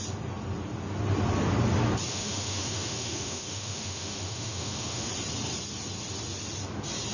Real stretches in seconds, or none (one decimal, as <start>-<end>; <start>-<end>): 0.0-2.1; 5.1-7.1